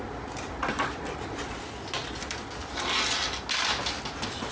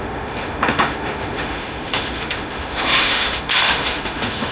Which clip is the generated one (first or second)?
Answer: second